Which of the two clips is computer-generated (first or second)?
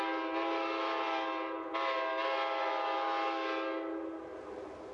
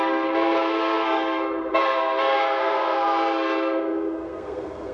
second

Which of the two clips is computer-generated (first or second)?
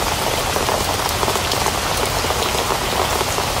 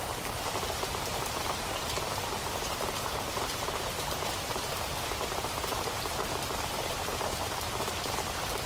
second